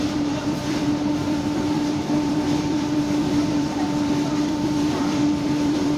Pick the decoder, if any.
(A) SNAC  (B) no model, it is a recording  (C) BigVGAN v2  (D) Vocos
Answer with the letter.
C